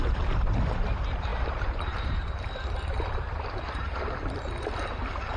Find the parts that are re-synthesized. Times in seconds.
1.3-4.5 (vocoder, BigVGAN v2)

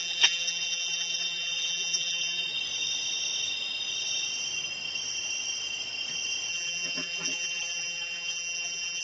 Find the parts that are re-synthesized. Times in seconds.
0.0-2.5 (vocoder, BigVGAN v2); 6.5-9.0

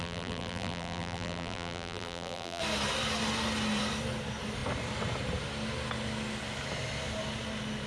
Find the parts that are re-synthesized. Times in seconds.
0.0-2.6 (vocoder, BigVGAN v2)

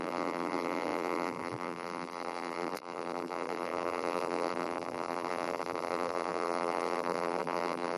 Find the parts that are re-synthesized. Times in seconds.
0.0-8.0 (vocoder, BigVGAN v2)

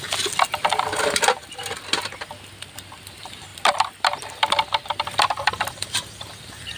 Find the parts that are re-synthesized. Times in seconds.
3.5-6.8 (vocoder, BigVGAN v2)

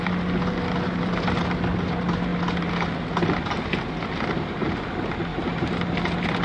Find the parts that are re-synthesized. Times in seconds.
5.3-5.9 (vocoder, BigVGAN v2)